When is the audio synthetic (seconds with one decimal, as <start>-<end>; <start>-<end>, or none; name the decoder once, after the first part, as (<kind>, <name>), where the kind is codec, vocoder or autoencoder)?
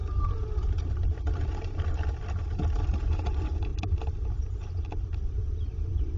none